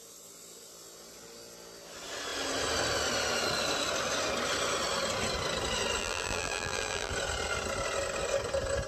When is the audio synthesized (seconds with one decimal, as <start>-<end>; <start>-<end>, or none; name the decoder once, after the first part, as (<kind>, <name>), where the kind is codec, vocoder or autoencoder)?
6.0-7.1 (vocoder, BigVGAN v2)